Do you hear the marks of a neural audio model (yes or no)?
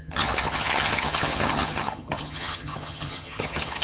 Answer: yes